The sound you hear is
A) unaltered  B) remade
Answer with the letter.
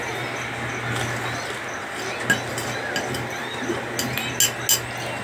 A